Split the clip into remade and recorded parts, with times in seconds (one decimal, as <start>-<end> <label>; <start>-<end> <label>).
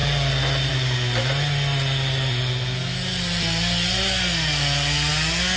0.0-5.6 recorded